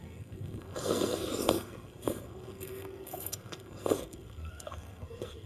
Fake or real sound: fake